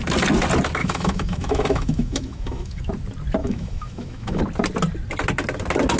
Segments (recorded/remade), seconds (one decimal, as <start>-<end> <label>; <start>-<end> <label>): 0.0-0.8 recorded; 0.8-2.8 remade; 2.8-3.4 recorded; 3.4-4.4 remade; 4.4-6.0 recorded